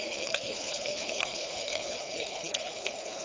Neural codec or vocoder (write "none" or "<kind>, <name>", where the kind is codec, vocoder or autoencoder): codec, HILCodec